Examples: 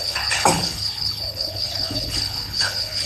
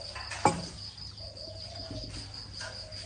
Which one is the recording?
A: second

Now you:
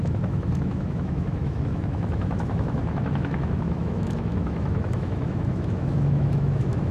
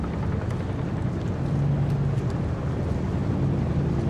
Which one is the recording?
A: second